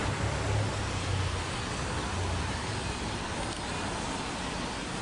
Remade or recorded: recorded